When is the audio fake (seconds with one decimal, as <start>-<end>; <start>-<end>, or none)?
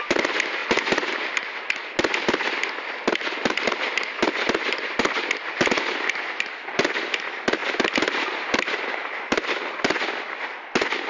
0.6-1.1; 7.6-9.8